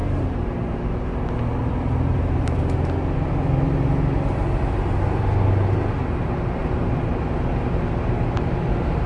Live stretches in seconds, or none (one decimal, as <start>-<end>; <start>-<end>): 2.6-6.6; 7.1-9.1